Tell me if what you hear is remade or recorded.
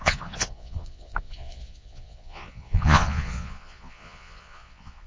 remade